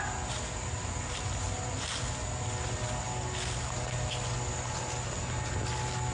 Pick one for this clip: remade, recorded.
recorded